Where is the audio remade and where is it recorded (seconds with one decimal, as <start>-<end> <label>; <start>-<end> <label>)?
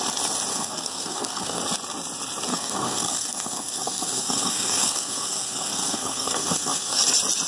0.0-0.5 recorded; 0.5-1.6 remade; 1.6-2.5 recorded; 2.5-7.0 remade; 7.0-7.5 recorded